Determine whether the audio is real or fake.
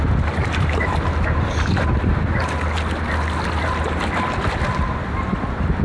real